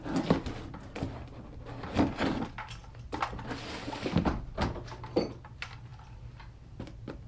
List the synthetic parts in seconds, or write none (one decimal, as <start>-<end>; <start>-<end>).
none